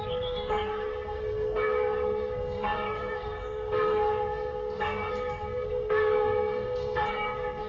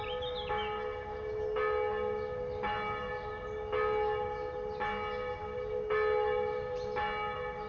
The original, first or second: second